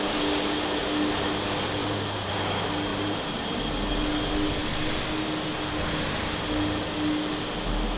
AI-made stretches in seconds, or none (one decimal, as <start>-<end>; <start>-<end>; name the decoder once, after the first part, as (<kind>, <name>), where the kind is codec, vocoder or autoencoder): 1.8-2.3 (vocoder, BigVGAN v2); 2.9-3.6